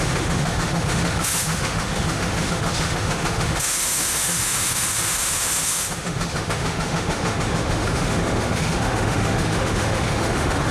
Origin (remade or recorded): remade